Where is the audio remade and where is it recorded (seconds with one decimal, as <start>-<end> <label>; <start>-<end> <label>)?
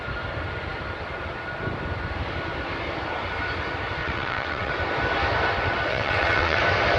0.0-4.0 recorded; 4.0-4.7 remade; 4.7-5.9 recorded; 5.9-6.6 remade; 6.6-7.0 recorded